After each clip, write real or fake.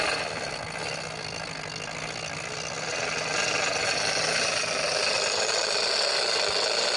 real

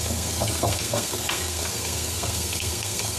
fake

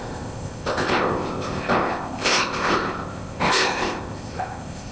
fake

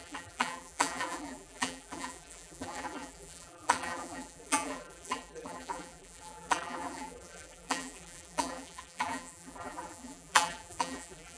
fake